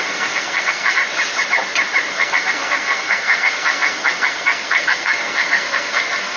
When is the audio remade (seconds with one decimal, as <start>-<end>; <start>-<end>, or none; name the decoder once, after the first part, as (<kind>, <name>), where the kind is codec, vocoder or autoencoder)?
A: 0.0-1.0 (codec, SNAC); 2.1-6.4